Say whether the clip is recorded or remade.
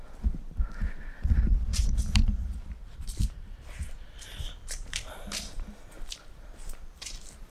remade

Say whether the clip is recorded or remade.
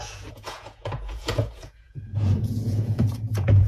remade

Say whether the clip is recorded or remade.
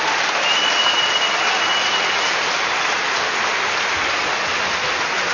recorded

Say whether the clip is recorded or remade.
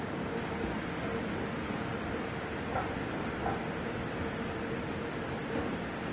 recorded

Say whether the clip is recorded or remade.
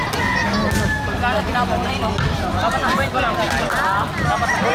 recorded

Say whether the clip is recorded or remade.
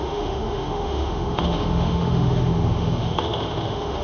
remade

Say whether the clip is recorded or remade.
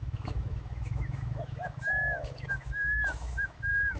remade